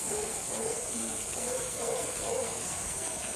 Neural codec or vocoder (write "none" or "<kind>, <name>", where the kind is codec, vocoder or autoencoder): codec, SNAC